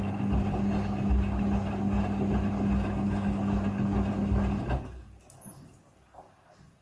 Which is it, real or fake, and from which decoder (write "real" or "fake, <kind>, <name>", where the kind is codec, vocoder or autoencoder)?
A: real